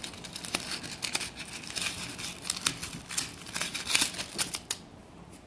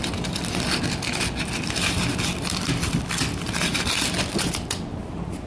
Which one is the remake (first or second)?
second